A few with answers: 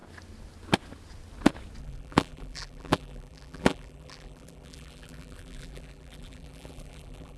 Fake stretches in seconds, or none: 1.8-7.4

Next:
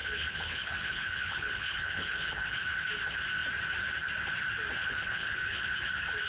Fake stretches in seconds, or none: 0.0-2.9; 4.8-5.7

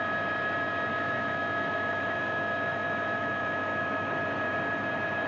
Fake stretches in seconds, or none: 0.9-4.1